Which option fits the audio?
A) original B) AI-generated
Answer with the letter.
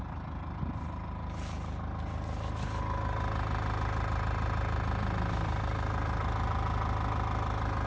A